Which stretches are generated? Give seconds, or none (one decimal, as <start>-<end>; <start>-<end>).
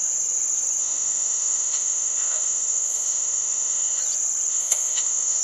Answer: 0.8-4.0; 4.5-5.4